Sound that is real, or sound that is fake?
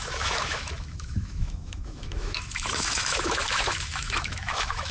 fake